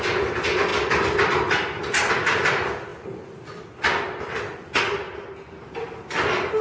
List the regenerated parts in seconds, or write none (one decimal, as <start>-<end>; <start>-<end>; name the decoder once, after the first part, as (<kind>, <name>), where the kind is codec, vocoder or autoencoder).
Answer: none